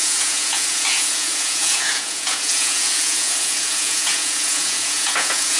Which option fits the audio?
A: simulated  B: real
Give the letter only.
A